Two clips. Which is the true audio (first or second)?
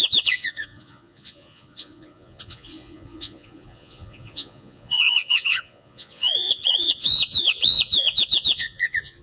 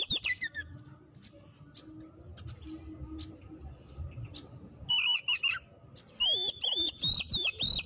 second